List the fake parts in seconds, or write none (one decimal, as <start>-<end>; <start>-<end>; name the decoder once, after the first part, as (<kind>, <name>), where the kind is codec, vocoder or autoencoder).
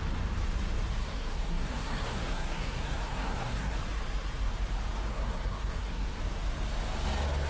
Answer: 1.0-3.8 (codec, SNAC); 5.1-6.2